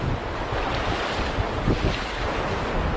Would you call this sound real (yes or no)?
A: yes